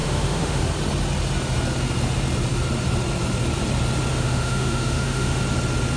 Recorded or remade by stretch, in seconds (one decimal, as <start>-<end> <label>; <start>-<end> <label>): 0.0-0.6 remade; 0.6-4.1 recorded; 4.1-5.4 remade; 5.4-6.0 recorded

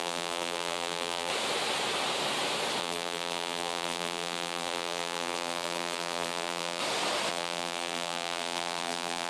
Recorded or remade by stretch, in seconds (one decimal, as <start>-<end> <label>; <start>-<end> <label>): 0.0-1.3 remade; 1.3-2.8 recorded; 2.8-6.8 remade; 6.8-7.3 recorded; 7.3-9.3 remade

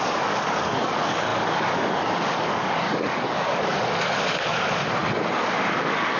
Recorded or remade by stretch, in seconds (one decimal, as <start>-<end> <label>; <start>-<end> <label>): 0.0-4.8 remade; 4.8-5.4 recorded; 5.4-6.2 remade